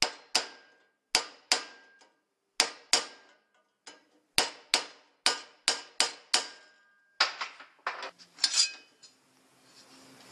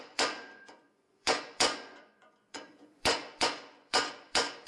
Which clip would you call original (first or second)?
first